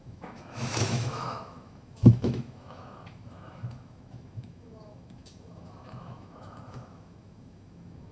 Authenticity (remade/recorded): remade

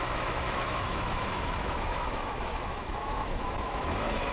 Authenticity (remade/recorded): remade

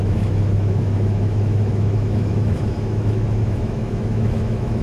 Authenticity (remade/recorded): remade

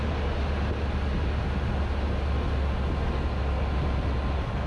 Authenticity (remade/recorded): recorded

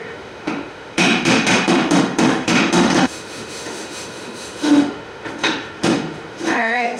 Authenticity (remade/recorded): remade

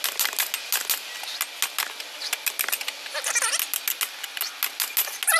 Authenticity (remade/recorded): recorded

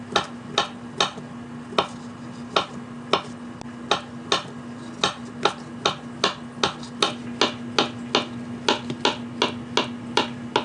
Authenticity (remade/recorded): recorded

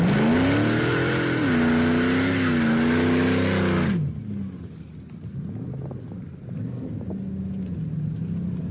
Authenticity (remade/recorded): recorded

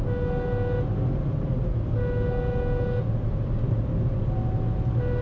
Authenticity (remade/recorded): recorded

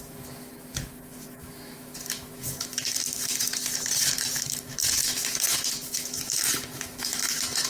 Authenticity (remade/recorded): remade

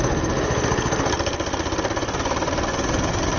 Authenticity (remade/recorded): recorded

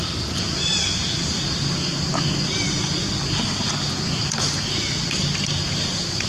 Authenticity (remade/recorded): recorded